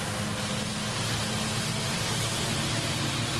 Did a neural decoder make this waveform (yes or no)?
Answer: no